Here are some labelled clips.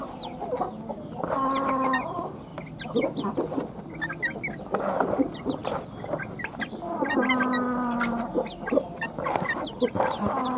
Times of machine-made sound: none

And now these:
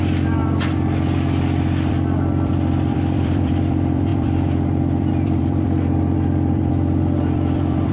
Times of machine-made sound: 0.0-0.4 (vocoder, BigVGAN v2); 1.9-7.9

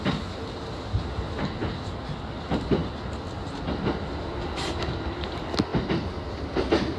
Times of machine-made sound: none

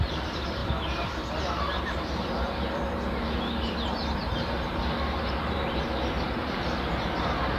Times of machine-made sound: 0.0-0.6 (vocoder, BigVGAN v2); 1.4-7.6

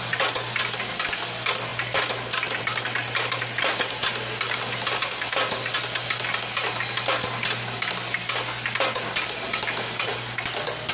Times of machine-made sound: 1.7-2.6 (vocoder, BigVGAN v2)

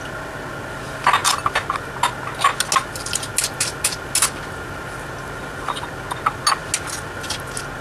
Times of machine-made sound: none